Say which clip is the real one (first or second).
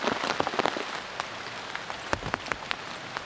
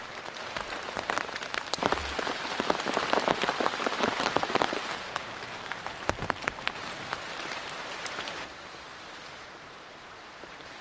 first